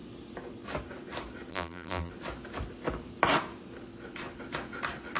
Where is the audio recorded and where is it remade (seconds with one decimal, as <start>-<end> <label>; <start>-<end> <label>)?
0.0-1.5 recorded; 1.5-2.1 remade; 2.1-5.2 recorded